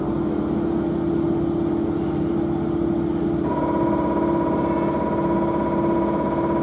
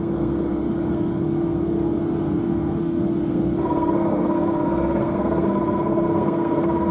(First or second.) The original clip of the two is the first